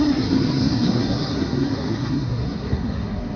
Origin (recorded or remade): remade